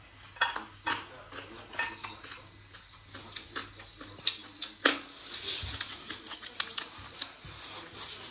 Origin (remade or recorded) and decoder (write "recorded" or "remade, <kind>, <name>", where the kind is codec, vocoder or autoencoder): recorded